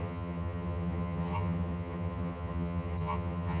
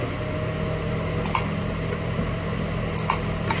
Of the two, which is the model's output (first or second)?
first